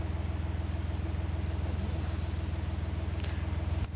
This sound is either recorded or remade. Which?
recorded